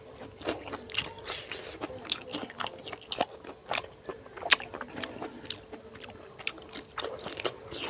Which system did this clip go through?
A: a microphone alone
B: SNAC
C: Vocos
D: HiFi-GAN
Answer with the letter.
A